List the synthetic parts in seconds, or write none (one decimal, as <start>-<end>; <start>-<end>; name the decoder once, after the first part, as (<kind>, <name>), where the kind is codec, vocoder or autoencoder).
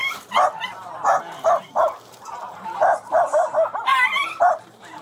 1.6-3.9 (vocoder, BigVGAN v2); 4.6-5.0